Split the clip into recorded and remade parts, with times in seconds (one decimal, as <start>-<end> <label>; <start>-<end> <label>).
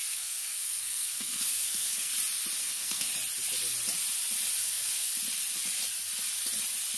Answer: 0.0-2.1 remade; 2.1-2.6 recorded; 2.6-3.1 remade; 3.1-4.6 recorded; 4.6-5.1 remade; 5.1-7.0 recorded